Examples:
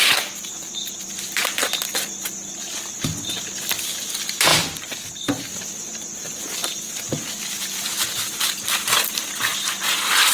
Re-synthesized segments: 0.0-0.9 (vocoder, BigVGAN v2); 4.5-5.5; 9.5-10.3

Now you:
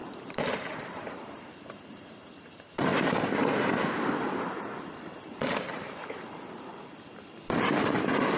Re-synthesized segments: 0.0-2.9 (vocoder, BigVGAN v2); 4.8-6.7